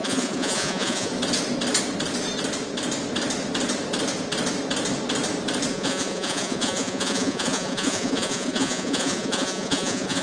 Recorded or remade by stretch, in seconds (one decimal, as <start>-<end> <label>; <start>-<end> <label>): 0.0-1.1 remade; 1.1-5.7 recorded; 5.7-10.2 remade